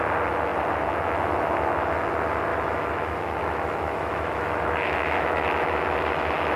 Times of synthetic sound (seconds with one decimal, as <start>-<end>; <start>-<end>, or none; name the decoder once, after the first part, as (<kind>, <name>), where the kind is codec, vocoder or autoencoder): 2.5-6.6 (autoencoder, DAC-VAE)